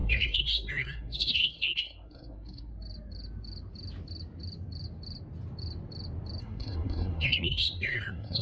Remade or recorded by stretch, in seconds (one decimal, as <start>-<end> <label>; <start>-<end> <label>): 0.0-2.7 remade; 2.7-6.4 recorded; 6.4-8.4 remade